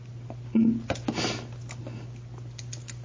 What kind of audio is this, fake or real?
real